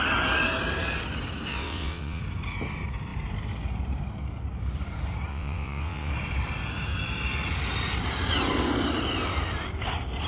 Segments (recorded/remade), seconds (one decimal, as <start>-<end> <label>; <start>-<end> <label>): 0.0-1.5 recorded; 1.5-2.2 remade; 2.2-5.3 recorded; 5.3-6.1 remade; 6.1-10.3 recorded